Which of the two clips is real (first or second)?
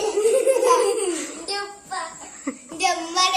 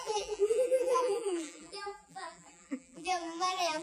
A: first